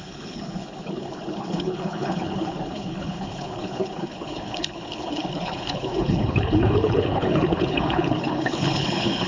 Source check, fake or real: fake